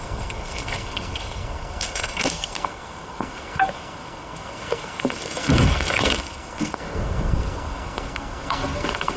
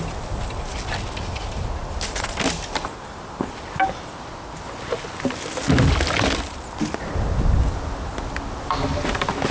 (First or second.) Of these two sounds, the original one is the second